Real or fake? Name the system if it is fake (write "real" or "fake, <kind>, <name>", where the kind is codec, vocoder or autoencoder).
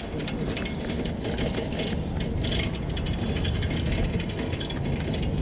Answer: real